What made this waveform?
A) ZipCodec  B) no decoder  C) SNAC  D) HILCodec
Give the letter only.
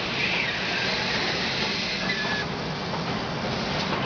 B